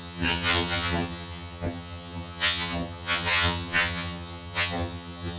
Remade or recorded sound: remade